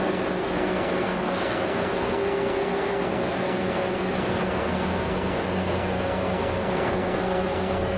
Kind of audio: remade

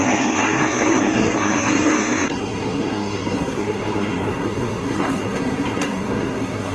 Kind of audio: remade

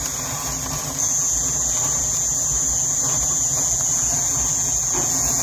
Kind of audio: recorded